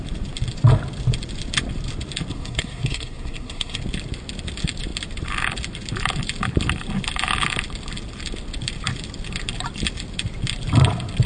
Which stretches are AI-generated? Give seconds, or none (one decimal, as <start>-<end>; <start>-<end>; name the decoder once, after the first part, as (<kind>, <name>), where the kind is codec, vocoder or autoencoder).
2.3-3.8 (codec, SNAC)